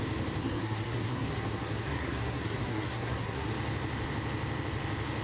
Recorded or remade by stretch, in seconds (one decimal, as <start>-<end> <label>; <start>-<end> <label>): 0.0-0.4 recorded; 0.4-3.5 remade; 3.5-5.2 recorded